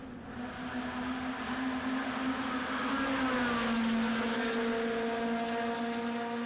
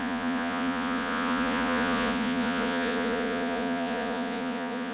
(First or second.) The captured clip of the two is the first